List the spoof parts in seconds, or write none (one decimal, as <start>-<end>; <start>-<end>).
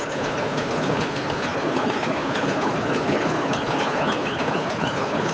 0.0-5.3